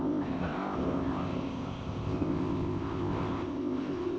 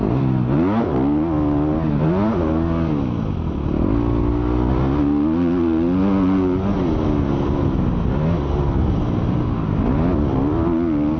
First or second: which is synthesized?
first